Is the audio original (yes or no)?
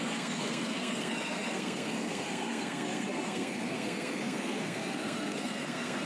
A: no